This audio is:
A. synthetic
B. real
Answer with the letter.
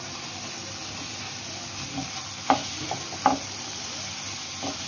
B